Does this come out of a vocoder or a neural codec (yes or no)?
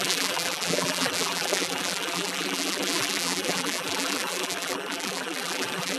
yes